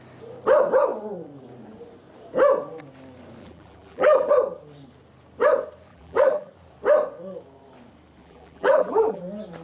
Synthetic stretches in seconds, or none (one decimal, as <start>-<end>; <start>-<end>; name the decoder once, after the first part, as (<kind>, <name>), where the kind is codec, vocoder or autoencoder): 3.4-4.3 (vocoder, BigVGAN v2); 5.9-6.5; 8.2-9.2